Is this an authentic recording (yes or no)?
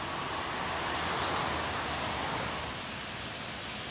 yes